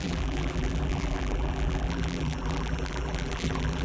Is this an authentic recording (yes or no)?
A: no